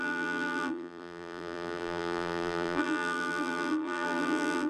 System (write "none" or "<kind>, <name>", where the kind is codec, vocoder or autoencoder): vocoder, BigVGAN v2